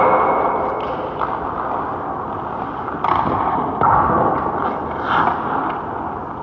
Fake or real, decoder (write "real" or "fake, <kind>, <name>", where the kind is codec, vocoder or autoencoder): real